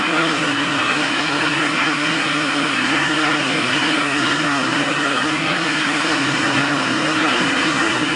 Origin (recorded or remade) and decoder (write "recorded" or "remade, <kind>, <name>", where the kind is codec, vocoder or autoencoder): remade, codec, SNAC